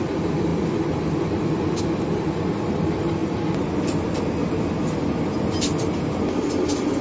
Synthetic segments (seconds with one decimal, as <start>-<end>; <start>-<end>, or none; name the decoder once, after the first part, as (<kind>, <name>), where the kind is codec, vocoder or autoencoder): none